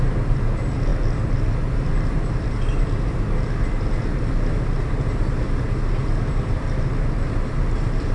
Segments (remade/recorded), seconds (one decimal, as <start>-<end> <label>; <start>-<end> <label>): 0.0-8.1 recorded